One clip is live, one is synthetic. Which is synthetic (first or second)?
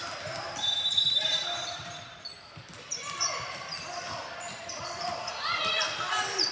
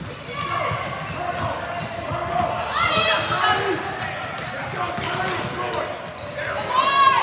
first